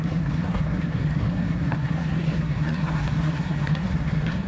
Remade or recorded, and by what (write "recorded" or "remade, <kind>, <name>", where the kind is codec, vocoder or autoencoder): remade, codec, SNAC